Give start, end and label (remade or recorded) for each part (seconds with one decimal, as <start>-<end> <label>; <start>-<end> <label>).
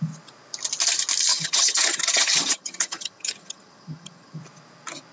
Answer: 0.0-1.3 recorded; 1.3-4.4 remade; 4.4-5.1 recorded